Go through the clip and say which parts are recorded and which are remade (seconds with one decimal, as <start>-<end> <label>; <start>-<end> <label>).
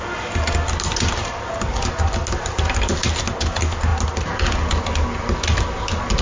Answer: 0.0-6.2 recorded